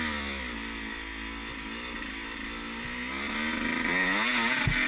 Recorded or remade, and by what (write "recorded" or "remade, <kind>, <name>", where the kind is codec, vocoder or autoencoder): recorded